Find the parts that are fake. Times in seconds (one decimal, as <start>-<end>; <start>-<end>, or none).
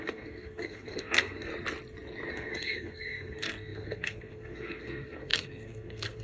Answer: 0.0-1.5; 2.3-6.2